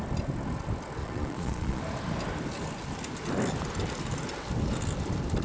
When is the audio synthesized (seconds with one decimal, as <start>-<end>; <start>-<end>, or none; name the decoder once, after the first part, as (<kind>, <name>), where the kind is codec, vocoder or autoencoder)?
1.0-1.8 (vocoder, Vocos)